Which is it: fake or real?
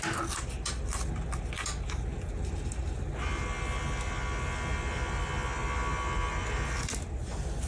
real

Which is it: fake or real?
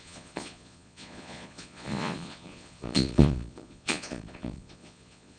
fake